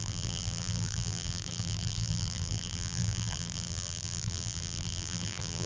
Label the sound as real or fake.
fake